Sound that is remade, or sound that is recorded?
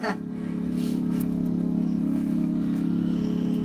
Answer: remade